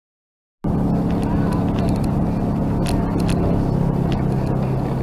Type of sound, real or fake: real